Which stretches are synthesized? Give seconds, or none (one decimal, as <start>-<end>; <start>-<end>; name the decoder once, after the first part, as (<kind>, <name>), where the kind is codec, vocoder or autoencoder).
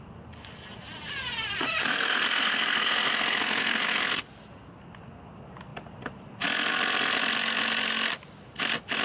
1.8-4.2 (codec, SNAC)